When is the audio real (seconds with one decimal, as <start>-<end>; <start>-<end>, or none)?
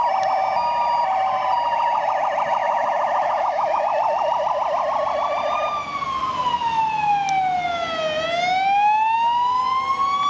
0.0-2.6; 3.8-10.3